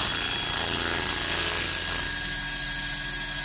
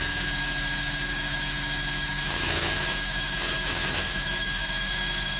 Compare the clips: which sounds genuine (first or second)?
first